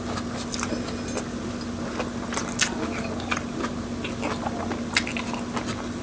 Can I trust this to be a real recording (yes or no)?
yes